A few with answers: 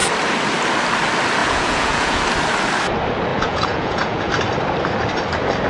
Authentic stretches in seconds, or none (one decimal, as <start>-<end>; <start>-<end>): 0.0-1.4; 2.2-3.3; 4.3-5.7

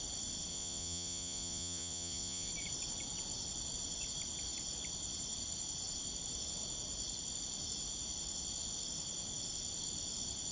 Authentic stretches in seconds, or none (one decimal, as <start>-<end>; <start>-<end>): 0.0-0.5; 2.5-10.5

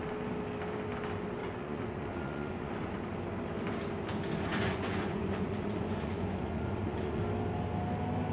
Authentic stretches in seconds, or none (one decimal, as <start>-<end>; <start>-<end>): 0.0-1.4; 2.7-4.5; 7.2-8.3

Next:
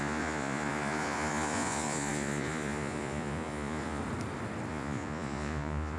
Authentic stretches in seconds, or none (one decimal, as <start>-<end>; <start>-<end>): 4.0-4.7

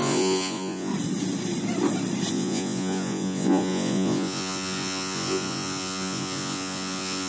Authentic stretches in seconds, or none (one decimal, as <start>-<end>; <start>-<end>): 0.9-2.3

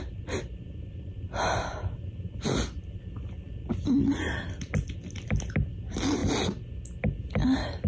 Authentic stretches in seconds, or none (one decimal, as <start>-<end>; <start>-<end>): 0.0-7.9